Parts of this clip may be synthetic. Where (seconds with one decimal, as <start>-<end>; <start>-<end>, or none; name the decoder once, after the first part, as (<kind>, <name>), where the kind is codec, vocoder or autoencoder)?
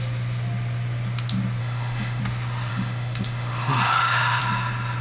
1.6-2.2 (autoencoder, DAC-VAE); 2.7-4.4